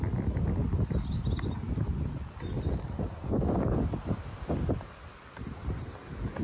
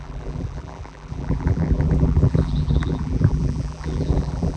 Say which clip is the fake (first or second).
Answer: second